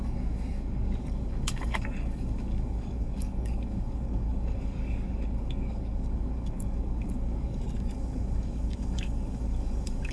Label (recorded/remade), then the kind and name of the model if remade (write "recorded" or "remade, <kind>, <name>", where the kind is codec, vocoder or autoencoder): remade, codec, DAC